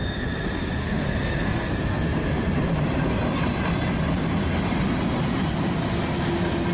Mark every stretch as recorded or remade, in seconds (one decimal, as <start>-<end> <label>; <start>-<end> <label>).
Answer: 0.0-0.8 recorded; 0.8-1.7 remade; 1.7-6.7 recorded